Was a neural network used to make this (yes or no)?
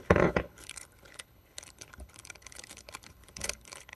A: yes